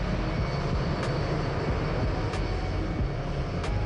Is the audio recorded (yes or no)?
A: yes